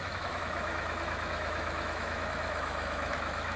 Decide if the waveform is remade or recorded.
remade